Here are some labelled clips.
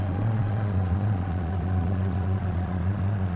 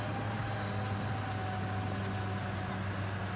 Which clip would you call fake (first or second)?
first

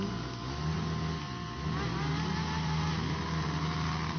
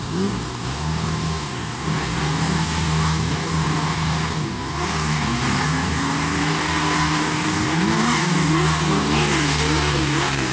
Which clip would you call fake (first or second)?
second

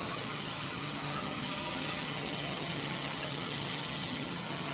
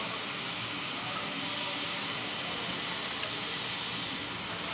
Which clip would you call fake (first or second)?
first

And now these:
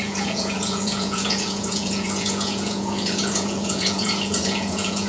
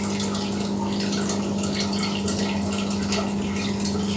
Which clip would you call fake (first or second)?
first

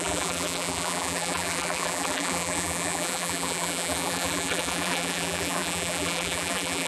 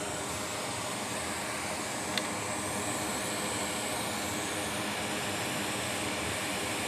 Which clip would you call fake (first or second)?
first